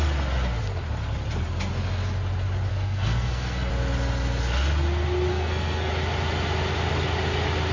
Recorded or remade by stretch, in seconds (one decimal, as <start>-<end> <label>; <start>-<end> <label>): 0.0-2.7 recorded; 2.7-3.7 remade; 3.7-5.3 recorded; 5.3-5.9 remade; 5.9-7.7 recorded